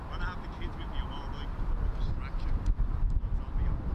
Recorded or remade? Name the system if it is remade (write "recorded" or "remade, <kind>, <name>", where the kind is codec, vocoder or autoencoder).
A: recorded